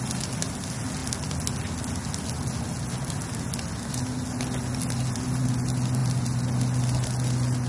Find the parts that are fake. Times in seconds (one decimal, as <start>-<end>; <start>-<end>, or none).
none